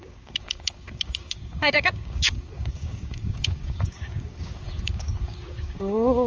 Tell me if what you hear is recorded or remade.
remade